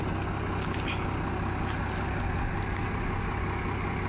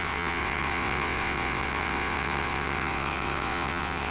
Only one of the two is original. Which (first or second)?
first